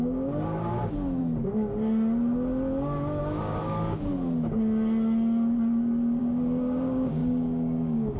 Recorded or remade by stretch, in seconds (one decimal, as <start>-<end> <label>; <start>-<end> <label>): 0.0-1.2 remade; 1.2-3.2 recorded; 3.2-4.1 remade; 4.1-6.2 recorded; 6.2-8.2 remade